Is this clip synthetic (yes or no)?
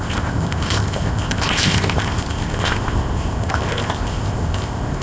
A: yes